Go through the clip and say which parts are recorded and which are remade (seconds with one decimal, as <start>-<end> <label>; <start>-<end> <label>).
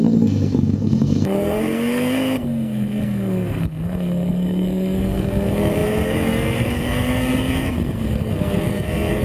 0.0-9.2 remade